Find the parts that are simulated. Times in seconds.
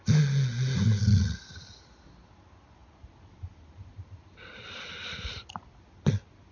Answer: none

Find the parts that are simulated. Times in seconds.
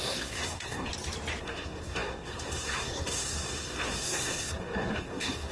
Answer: 0.0-0.9 (codec, SNAC); 1.4-5.5